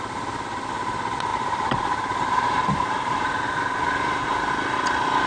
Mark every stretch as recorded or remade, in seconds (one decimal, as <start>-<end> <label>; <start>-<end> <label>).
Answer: 0.0-1.3 recorded; 1.3-4.5 remade; 4.5-5.3 recorded